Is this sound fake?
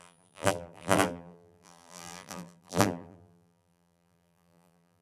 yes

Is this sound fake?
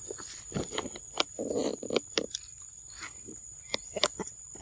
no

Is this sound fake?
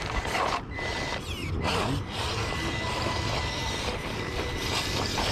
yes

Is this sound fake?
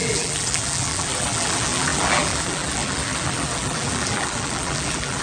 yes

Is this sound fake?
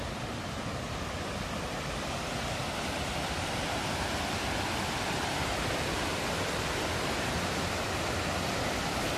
yes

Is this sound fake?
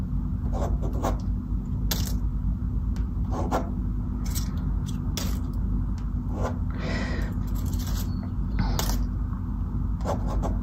no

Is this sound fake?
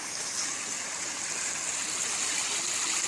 no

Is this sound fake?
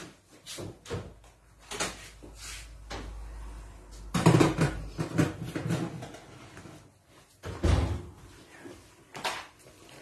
no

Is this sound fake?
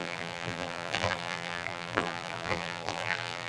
yes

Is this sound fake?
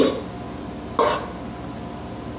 no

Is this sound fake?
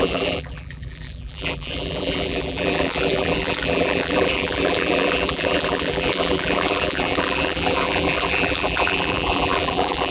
yes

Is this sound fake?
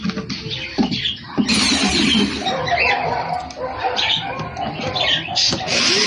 yes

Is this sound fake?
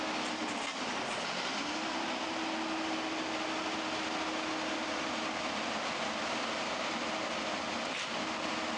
no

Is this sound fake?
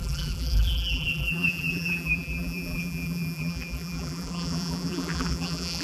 yes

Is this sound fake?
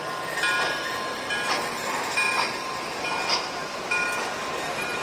no